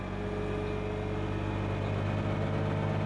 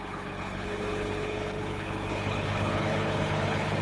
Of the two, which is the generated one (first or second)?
second